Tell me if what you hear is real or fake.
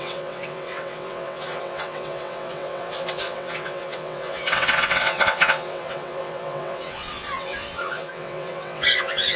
fake